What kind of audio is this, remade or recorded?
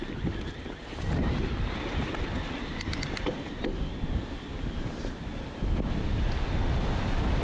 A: recorded